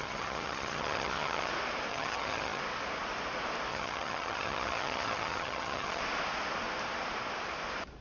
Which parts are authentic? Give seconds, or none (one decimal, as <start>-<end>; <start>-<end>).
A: 1.5-1.9; 2.6-3.7; 6.0-8.0